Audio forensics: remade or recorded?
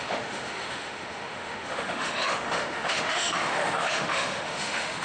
remade